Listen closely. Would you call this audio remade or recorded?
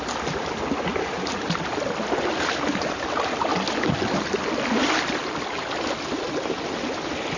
recorded